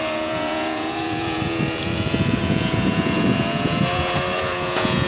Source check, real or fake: fake